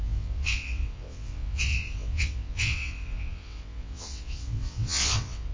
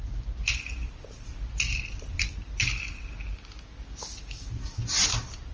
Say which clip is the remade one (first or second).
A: first